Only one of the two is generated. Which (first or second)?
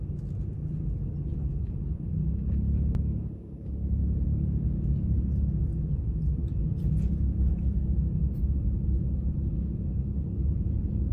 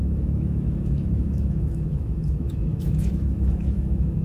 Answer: second